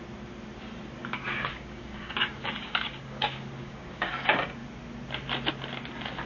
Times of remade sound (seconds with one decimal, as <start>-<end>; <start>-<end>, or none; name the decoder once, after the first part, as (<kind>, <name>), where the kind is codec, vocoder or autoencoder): 1.0-4.1 (codec, DAC)